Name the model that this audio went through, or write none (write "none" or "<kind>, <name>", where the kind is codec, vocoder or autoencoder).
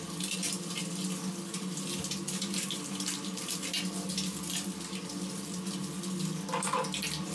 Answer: none